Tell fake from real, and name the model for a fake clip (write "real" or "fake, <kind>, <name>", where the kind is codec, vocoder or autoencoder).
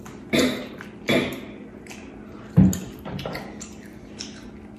real